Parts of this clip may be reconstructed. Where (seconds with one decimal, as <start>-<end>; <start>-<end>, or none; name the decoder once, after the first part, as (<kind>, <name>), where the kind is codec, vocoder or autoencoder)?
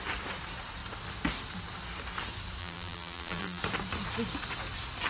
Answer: 2.6-3.6 (vocoder, BigVGAN v2)